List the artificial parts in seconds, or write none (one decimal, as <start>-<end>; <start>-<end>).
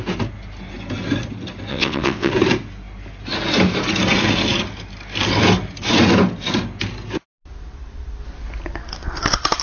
1.7-2.3